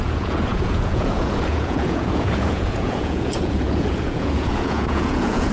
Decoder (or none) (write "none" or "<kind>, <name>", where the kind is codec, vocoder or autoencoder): vocoder, Vocos